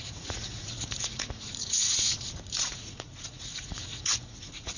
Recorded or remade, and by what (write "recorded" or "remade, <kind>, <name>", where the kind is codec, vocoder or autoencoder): remade, vocoder, Vocos